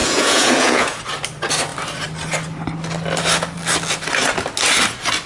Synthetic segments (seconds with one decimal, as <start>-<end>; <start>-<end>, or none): 0.0-1.0